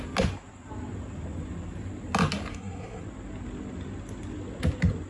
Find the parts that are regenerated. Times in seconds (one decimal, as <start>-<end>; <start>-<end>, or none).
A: 2.5-3.0

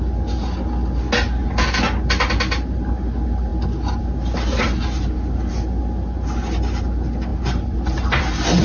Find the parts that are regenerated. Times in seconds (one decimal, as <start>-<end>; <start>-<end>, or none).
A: 7.3-8.6